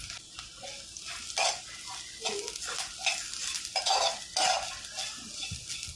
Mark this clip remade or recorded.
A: recorded